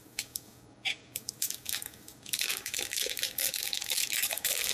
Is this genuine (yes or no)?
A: no